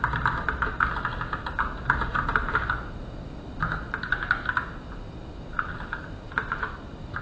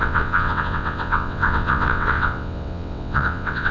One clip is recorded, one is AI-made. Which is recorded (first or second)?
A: first